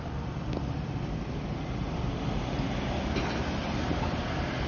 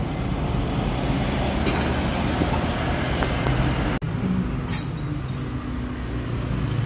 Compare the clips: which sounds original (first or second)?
second